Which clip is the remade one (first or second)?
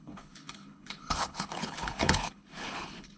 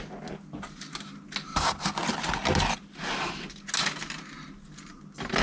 first